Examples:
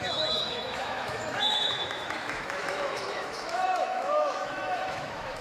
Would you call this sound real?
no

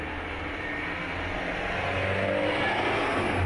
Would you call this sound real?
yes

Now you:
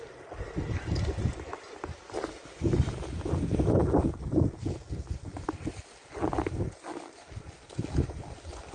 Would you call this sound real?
yes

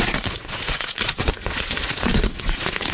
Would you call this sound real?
no